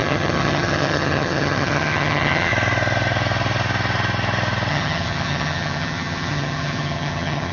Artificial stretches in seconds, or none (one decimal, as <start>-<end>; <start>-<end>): 0.0-2.5; 4.7-7.5